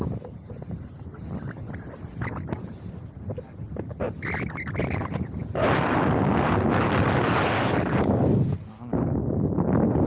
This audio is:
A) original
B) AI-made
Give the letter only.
A